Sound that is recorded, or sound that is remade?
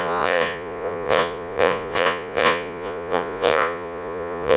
remade